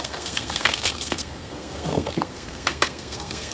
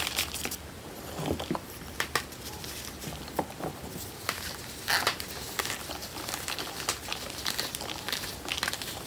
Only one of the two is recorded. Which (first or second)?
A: second